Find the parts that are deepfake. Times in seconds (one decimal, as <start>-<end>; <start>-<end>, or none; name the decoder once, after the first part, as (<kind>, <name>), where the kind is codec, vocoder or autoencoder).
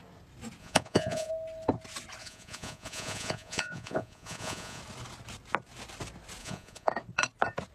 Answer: 0.6-1.3 (vocoder, Vocos); 2.2-4.8; 6.4-6.9